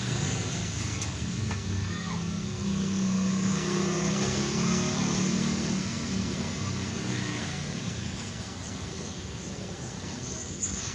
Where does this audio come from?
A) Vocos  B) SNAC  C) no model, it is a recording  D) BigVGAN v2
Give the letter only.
B